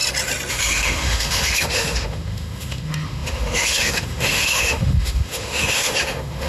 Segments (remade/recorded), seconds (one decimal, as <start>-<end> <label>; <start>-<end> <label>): 0.0-0.5 recorded; 0.5-6.5 remade